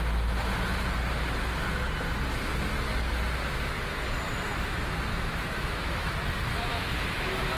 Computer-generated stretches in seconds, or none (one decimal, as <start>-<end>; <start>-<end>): 5.1-6.1; 6.7-7.6